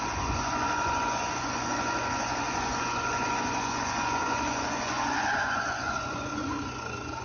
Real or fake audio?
fake